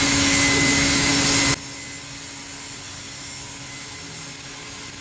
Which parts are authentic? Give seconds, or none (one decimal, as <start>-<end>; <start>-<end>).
0.0-5.0